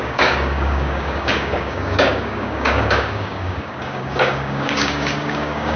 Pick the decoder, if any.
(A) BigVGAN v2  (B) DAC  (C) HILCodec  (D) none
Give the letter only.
B